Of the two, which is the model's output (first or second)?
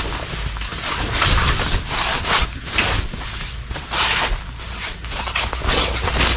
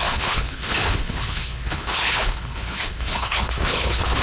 second